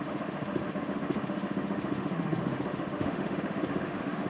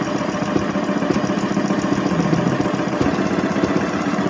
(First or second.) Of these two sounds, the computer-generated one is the first